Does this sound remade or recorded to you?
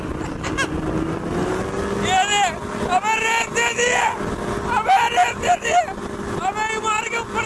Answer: recorded